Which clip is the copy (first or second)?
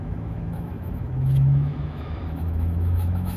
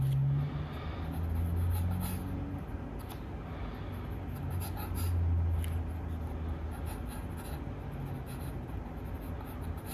first